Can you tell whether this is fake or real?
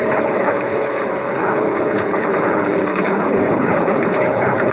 fake